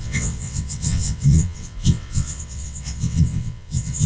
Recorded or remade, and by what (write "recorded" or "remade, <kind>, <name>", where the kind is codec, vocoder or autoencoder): remade, vocoder, WaveNeXt